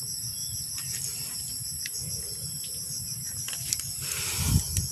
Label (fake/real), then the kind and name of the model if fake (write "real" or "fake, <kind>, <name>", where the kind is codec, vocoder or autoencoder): real